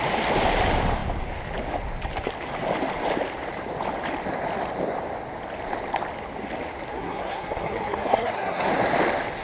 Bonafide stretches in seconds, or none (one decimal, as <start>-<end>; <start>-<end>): 0.0-6.9; 8.7-9.4